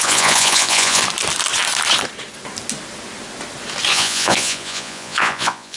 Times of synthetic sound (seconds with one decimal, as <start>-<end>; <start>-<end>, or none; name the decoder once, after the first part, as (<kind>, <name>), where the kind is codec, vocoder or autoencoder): 0.0-1.0 (vocoder, Vocos); 3.9-5.8